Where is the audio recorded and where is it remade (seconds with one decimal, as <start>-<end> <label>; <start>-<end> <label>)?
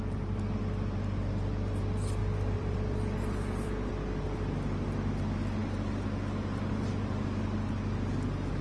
0.0-2.2 recorded; 2.2-3.9 remade; 3.9-8.6 recorded